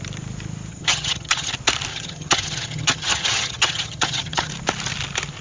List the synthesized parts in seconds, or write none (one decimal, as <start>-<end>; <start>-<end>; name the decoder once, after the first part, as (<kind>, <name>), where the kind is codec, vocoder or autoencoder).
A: 0.7-1.5 (vocoder, HiFi-GAN); 1.9-4.5